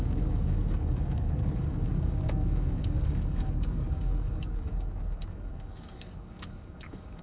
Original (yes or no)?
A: no